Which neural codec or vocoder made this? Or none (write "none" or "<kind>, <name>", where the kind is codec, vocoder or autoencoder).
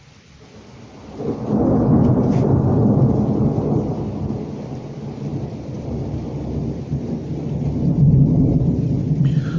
none